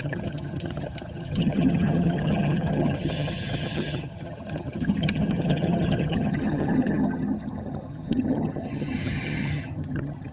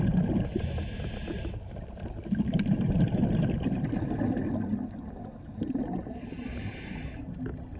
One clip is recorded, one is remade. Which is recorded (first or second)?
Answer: second